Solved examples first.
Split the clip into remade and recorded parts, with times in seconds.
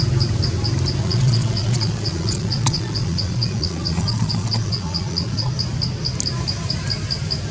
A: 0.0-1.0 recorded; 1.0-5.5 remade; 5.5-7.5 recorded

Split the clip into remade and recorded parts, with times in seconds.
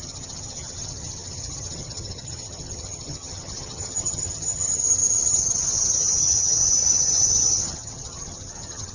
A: 0.0-8.9 remade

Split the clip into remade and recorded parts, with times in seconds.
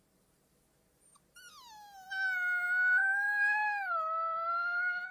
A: 0.0-3.0 recorded; 3.0-5.1 remade